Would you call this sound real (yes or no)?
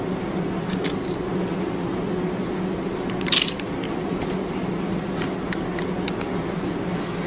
yes